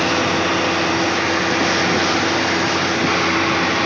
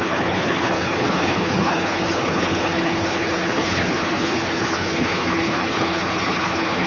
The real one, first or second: first